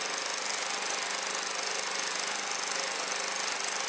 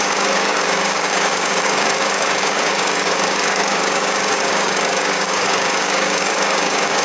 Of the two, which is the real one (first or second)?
first